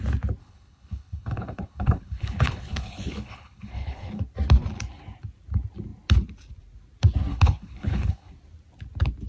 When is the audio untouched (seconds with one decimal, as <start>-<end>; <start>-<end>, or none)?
0.0-0.4; 4.2-7.3; 8.3-9.3